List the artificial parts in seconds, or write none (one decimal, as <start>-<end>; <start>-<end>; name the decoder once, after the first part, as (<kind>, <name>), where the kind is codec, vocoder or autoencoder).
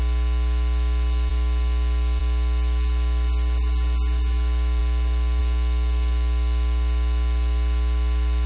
none